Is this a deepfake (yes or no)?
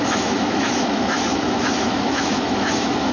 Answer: yes